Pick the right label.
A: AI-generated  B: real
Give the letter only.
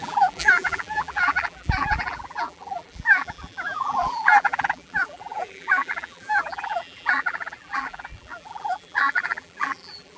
A